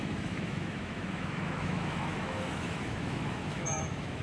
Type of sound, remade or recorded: remade